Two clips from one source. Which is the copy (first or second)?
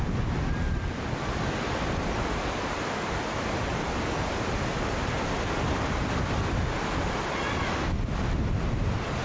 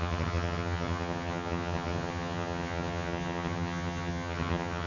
second